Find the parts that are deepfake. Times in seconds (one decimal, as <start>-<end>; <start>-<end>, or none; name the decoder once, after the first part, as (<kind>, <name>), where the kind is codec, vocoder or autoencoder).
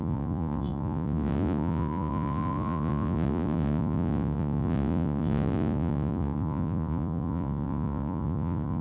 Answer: 0.0-8.8 (vocoder, Vocos)